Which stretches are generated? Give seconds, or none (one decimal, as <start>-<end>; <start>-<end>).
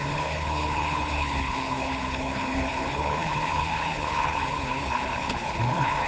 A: 0.0-6.1